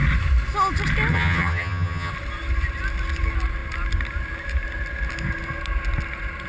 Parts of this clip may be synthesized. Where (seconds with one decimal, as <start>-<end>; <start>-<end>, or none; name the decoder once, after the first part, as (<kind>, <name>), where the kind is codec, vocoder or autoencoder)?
1.1-2.1 (vocoder, HiFi-GAN)